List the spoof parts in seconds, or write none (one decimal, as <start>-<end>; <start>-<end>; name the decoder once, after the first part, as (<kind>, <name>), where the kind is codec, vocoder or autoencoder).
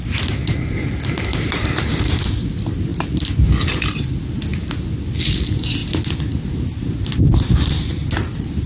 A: none